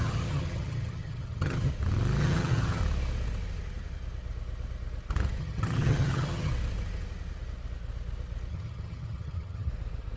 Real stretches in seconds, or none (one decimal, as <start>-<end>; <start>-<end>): 1.7-2.2; 2.8-5.4; 6.5-8.5; 9.7-10.2